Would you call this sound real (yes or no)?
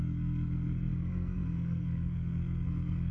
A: no